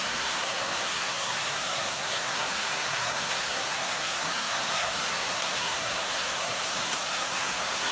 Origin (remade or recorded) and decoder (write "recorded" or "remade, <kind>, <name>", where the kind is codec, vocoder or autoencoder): remade, codec, SNAC